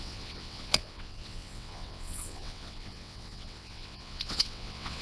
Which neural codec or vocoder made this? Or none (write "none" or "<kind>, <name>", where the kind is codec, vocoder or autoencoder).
vocoder, WaveNeXt